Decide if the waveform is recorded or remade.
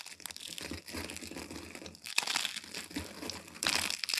recorded